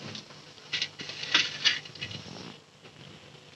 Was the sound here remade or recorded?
recorded